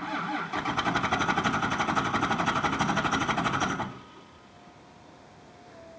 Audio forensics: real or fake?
real